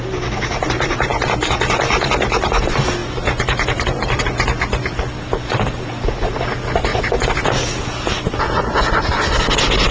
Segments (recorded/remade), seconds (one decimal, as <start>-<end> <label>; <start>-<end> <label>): 0.0-9.9 recorded